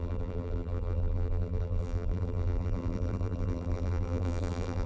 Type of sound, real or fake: fake